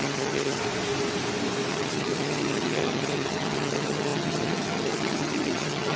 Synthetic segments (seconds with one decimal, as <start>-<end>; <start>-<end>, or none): 0.0-0.6; 1.7-6.0